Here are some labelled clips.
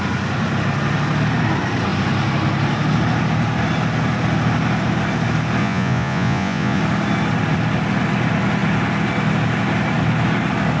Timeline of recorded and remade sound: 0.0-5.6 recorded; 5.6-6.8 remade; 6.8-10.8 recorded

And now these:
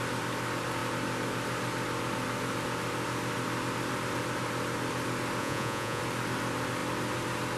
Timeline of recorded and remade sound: 0.0-5.4 recorded; 5.4-6.0 remade; 6.0-7.6 recorded

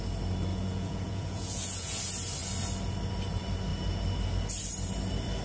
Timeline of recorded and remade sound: 0.0-0.5 recorded; 0.5-2.0 remade; 2.0-5.4 recorded

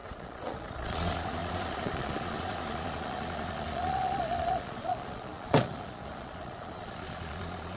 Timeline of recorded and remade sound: 0.0-7.8 remade

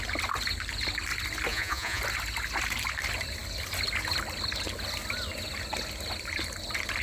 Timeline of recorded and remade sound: 0.0-1.5 recorded; 1.5-2.0 remade; 2.0-7.0 recorded

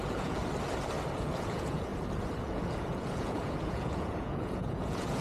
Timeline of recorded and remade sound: 0.0-0.4 remade; 0.4-1.1 recorded; 1.1-1.9 remade; 1.9-2.4 recorded; 2.4-5.2 remade

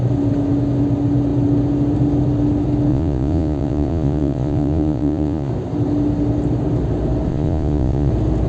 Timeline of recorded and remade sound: 0.0-2.9 recorded; 2.9-5.5 remade; 5.5-7.3 recorded; 7.3-8.1 remade; 8.1-8.5 recorded

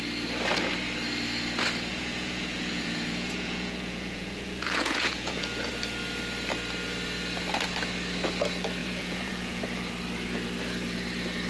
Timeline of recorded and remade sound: 0.0-1.9 recorded; 1.9-5.7 remade; 5.7-8.8 recorded; 8.8-9.6 remade; 9.6-11.5 recorded